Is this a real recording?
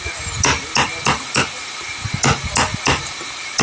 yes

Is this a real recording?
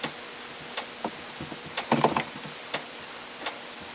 yes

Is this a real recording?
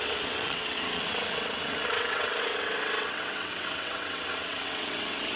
no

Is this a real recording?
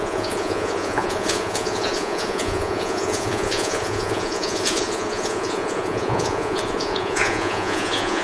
no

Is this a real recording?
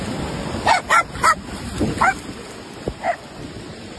yes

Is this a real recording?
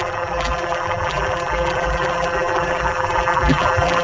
no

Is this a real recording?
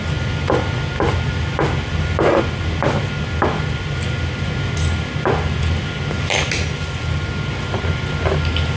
yes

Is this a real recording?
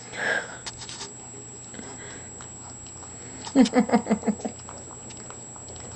yes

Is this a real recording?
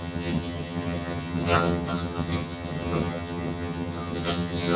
no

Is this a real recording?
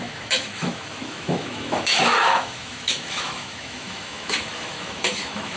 no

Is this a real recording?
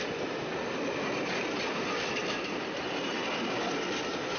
yes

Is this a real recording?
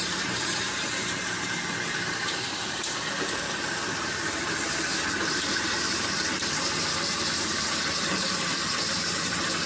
no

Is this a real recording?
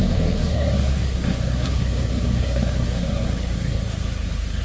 no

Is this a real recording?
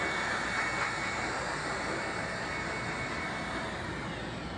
yes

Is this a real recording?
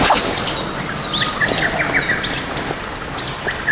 yes